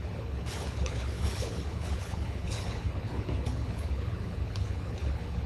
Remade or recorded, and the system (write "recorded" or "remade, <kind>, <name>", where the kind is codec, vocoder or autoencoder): remade, codec, HILCodec